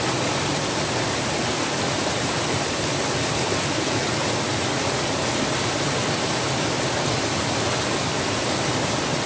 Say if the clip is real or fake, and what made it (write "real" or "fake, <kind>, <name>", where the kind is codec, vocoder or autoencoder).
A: real